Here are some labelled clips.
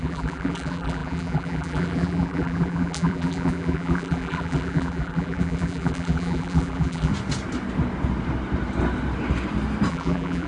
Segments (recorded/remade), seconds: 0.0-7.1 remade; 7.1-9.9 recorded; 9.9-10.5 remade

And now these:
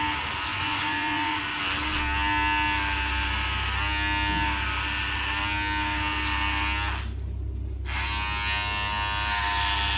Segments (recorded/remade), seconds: 0.0-0.5 recorded; 0.5-1.4 remade; 1.4-10.0 recorded

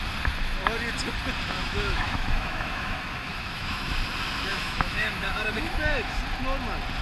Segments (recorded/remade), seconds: 0.0-1.6 recorded; 1.6-3.9 remade; 3.9-4.5 recorded; 4.5-6.2 remade; 6.2-7.0 recorded

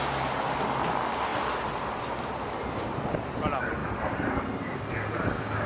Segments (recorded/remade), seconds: 0.0-1.3 recorded; 1.3-2.0 remade; 2.0-3.8 recorded; 3.8-4.9 remade; 4.9-5.7 recorded

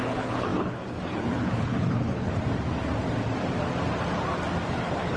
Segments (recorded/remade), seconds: 0.0-2.3 remade; 2.3-4.7 recorded; 4.7-5.2 remade

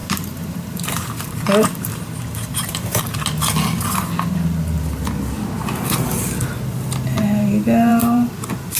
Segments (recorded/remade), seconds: 0.0-3.0 remade; 3.0-7.9 recorded; 7.9-8.8 remade

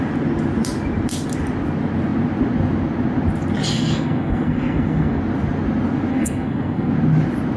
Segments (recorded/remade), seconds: 0.0-3.7 recorded; 3.7-5.2 remade; 5.2-6.1 recorded; 6.1-6.9 remade; 6.9-7.6 recorded

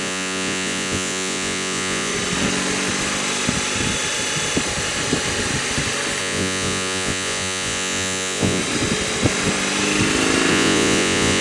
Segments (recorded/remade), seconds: 0.0-2.1 remade; 2.1-6.2 recorded; 6.2-8.6 remade; 8.6-10.5 recorded; 10.5-11.4 remade